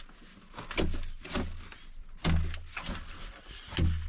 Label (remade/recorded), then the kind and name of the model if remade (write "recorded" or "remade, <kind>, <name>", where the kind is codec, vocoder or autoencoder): recorded